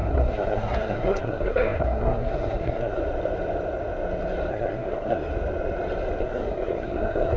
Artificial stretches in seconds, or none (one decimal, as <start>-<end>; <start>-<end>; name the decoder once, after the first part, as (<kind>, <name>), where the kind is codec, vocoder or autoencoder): 0.0-3.0 (codec, SNAC); 4.5-5.3; 6.2-7.4